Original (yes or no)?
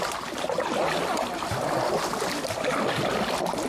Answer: yes